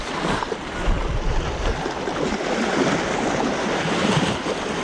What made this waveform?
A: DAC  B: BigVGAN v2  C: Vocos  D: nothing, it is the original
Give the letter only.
B